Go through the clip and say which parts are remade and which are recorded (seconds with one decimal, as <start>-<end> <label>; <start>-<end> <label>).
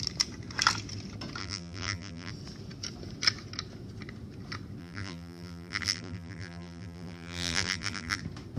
0.0-1.4 recorded; 1.4-2.3 remade; 2.3-4.8 recorded; 4.8-8.2 remade; 8.2-8.6 recorded